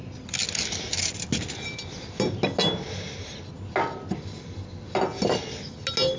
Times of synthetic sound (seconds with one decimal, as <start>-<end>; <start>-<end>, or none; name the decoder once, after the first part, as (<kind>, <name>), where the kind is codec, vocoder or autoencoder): none